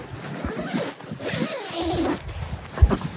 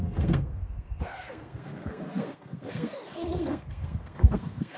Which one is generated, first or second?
second